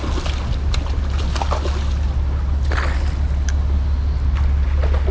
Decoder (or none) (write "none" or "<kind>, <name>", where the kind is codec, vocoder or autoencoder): none